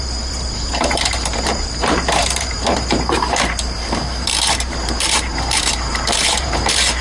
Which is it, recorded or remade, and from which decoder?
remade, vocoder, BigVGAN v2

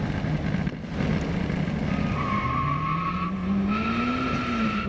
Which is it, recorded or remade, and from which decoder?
recorded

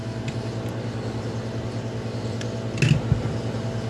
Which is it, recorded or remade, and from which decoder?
recorded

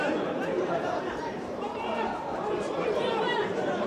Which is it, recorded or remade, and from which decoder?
remade, vocoder, BigVGAN v2